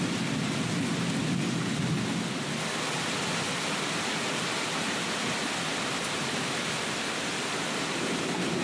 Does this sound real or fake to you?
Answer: real